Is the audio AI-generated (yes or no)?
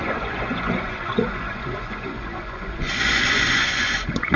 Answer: yes